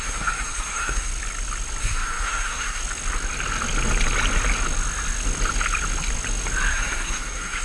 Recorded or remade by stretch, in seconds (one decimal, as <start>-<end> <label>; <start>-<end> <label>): 0.0-1.1 remade; 1.1-1.8 recorded; 1.8-2.8 remade; 2.8-6.7 recorded; 6.7-7.6 remade